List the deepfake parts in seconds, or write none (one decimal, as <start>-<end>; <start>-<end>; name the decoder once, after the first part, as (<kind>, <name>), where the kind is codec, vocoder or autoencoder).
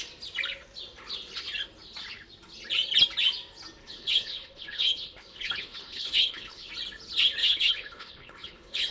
3.8-6.7 (codec, HILCodec); 7.4-8.9